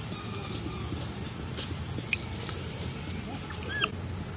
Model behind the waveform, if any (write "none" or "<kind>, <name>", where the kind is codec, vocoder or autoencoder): none